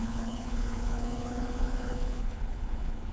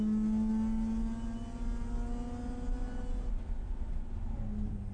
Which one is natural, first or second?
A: second